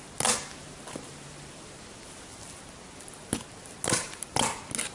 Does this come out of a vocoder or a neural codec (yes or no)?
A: no